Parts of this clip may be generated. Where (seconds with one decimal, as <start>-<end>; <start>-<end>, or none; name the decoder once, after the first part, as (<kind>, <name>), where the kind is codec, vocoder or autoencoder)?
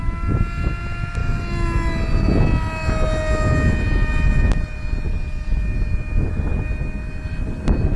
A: none